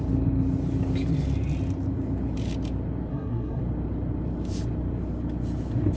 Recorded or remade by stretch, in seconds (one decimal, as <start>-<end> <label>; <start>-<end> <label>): 0.0-3.1 recorded; 3.1-3.6 remade; 3.6-6.0 recorded